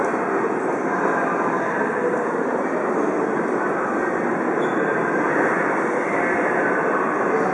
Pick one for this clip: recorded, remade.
recorded